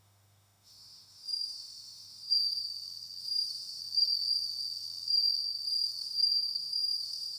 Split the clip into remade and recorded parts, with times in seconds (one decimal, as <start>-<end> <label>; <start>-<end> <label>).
0.0-2.6 remade; 2.6-3.2 recorded; 3.2-3.8 remade; 3.8-6.0 recorded; 6.0-7.4 remade